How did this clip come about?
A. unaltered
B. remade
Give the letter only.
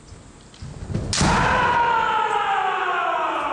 A